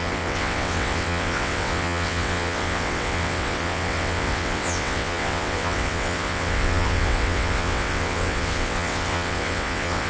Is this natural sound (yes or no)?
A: no